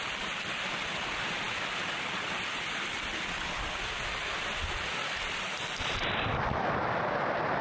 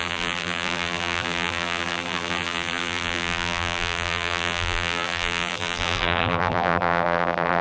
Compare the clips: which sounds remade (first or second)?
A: second